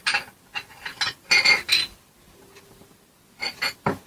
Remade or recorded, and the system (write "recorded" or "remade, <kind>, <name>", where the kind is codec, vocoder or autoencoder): recorded